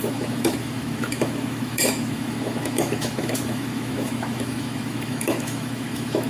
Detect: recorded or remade remade